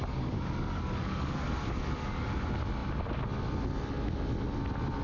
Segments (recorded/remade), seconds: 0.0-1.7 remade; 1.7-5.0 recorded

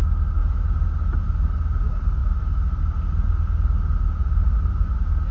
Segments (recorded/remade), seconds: 0.0-5.3 recorded

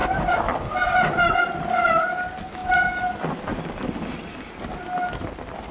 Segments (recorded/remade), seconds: 0.0-5.7 recorded